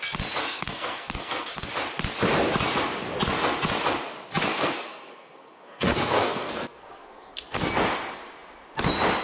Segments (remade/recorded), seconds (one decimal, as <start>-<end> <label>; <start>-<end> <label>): 0.0-0.4 recorded; 0.4-1.7 remade; 1.7-4.5 recorded; 4.5-7.7 remade; 7.7-9.2 recorded